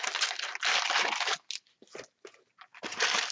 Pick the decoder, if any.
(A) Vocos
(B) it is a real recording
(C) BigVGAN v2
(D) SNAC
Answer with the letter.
B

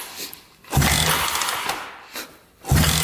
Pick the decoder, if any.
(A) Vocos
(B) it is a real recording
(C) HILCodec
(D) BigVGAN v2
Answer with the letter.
B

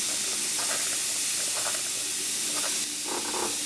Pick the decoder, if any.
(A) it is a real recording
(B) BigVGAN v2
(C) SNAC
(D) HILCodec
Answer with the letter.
A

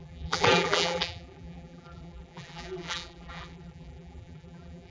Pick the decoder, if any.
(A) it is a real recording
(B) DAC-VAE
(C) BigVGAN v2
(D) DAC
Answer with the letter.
C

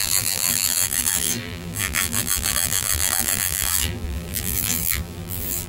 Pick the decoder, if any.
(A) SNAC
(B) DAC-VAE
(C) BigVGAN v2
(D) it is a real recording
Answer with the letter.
C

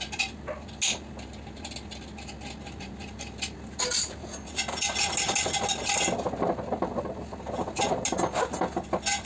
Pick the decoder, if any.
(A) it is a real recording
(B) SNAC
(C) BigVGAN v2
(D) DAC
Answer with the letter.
A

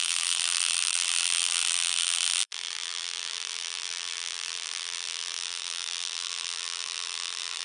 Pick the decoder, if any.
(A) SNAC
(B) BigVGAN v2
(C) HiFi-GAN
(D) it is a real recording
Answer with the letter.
B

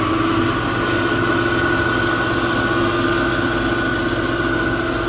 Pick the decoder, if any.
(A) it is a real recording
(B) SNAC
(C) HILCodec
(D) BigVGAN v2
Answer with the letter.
A